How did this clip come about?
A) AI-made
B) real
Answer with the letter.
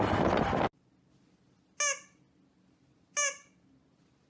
B